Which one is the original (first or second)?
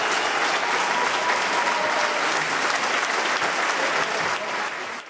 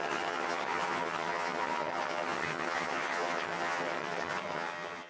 first